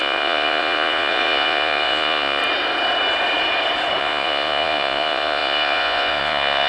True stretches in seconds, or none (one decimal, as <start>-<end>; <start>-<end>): 2.4-4.0